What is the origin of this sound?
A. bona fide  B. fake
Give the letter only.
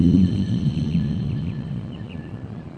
B